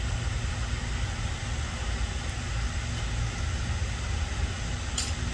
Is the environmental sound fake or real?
real